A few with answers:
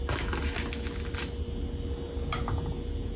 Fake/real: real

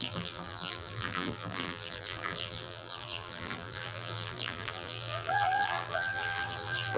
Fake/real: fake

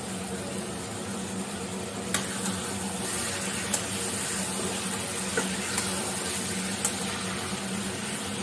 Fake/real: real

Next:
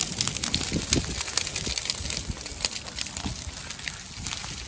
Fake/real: real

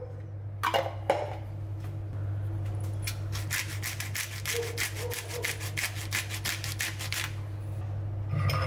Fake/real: real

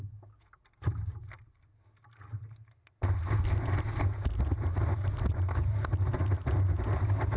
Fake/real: real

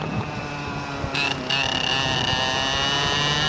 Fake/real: real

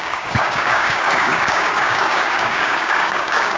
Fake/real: fake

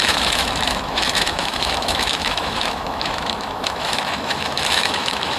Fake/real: fake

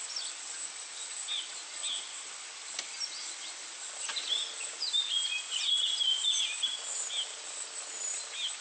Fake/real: real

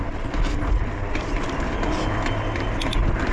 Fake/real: real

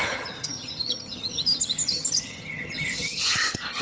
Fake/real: fake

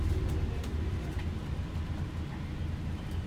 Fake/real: real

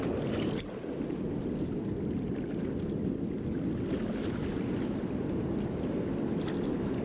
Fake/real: real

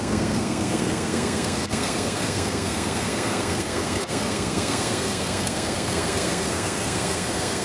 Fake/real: fake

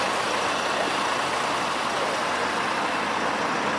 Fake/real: real